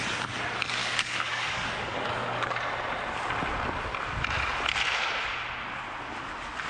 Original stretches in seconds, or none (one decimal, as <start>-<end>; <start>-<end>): 0.0-0.8; 2.6-6.7